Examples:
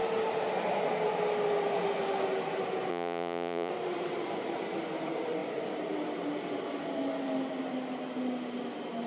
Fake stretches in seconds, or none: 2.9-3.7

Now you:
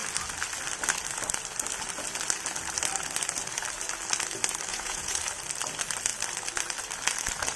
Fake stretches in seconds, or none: 4.7-5.2

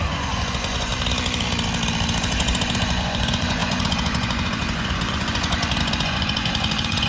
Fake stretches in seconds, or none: 0.0-0.9; 2.2-7.1

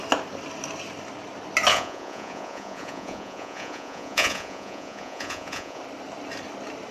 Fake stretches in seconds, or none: 1.7-5.8

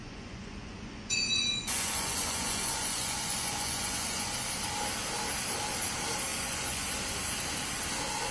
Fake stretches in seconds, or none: 0.0-4.3; 6.3-6.9